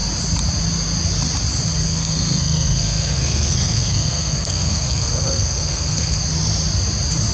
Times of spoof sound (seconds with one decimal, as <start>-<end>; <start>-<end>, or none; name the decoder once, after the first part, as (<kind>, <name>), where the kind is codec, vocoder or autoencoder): 1.8-6.2 (codec, SNAC)